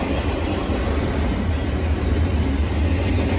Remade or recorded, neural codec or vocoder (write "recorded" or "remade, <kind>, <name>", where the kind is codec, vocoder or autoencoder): recorded